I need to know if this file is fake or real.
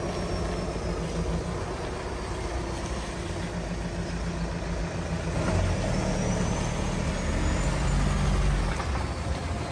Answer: real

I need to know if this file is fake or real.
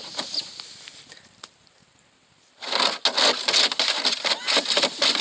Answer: real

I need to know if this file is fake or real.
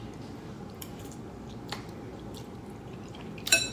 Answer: fake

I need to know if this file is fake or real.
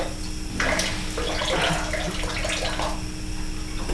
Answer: real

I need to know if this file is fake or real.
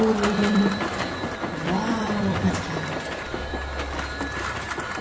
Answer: fake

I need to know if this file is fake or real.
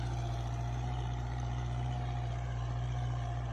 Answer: fake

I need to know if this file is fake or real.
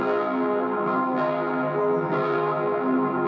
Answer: fake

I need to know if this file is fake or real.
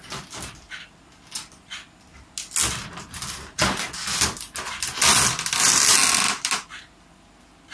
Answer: real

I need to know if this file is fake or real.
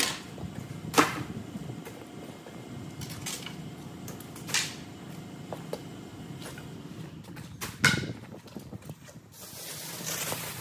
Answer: real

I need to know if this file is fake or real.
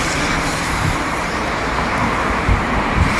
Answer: fake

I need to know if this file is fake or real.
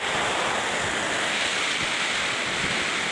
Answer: real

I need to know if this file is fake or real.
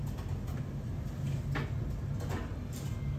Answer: real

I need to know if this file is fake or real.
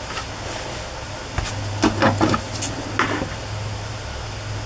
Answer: real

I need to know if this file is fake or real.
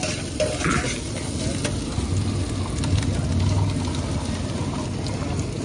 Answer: real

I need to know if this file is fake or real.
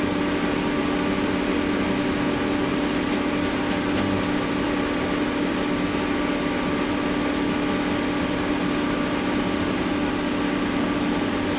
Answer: real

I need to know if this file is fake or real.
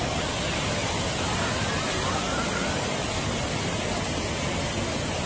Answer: real